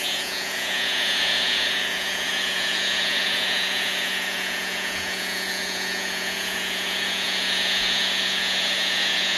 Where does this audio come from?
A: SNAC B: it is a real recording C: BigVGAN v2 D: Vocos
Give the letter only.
D